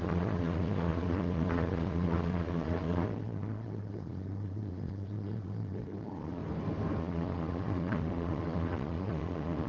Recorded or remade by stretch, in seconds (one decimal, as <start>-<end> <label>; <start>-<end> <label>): 0.0-6.4 remade; 6.4-7.0 recorded; 7.0-9.7 remade